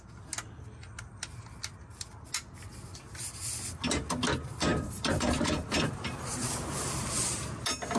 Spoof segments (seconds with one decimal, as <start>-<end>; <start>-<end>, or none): 4.7-6.6